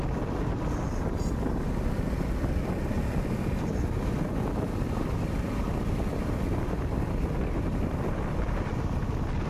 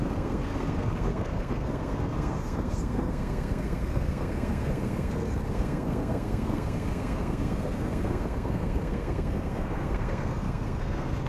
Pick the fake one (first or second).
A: second